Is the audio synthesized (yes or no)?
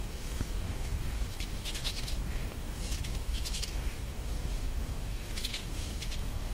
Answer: yes